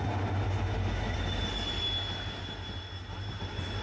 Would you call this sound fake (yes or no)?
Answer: no